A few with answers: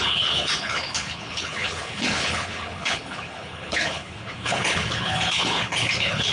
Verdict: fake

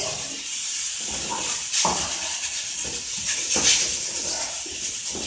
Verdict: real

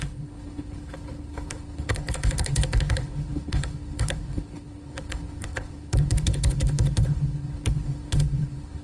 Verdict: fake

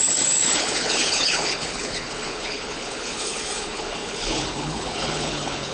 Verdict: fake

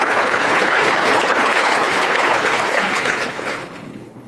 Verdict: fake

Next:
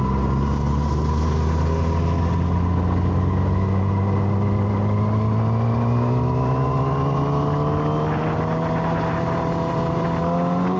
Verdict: real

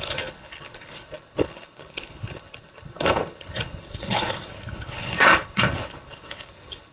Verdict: fake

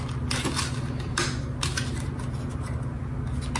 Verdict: real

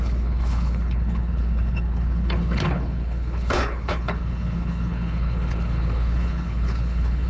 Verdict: fake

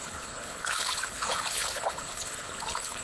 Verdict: fake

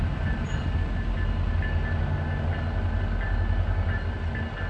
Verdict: real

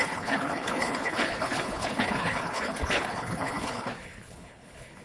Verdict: fake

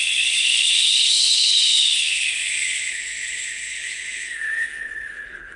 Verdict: fake